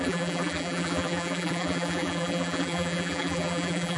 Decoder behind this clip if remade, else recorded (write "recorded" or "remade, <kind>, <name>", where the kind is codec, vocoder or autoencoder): remade, vocoder, BigVGAN v2